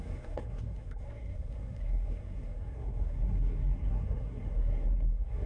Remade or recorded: remade